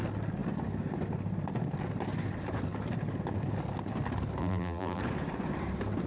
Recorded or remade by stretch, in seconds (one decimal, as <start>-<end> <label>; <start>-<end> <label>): 0.0-4.4 recorded; 4.4-5.0 remade; 5.0-6.1 recorded